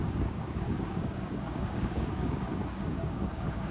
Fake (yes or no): yes